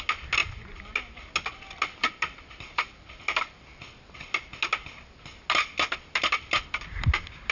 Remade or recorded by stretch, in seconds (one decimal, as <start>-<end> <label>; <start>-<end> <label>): 0.0-7.5 recorded